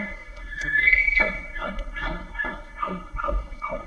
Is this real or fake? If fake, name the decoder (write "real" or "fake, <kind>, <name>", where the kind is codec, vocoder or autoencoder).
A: fake, codec, SNAC